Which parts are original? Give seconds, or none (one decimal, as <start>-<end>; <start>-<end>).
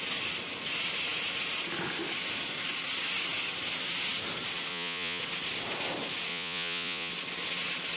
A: 0.0-4.7; 5.2-6.3; 7.1-8.0